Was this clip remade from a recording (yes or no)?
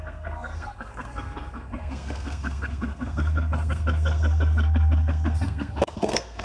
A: yes